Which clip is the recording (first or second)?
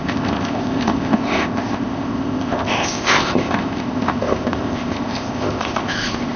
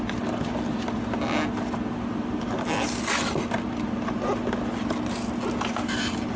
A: second